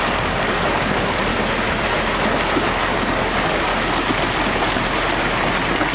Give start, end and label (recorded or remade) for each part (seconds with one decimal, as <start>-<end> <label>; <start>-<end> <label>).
0.0-1.3 remade; 1.3-3.1 recorded; 3.1-3.7 remade; 3.7-5.9 recorded